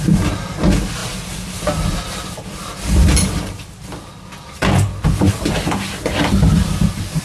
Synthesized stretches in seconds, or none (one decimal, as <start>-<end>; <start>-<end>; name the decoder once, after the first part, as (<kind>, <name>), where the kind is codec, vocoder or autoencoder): 1.0-5.3 (vocoder, BigVGAN v2)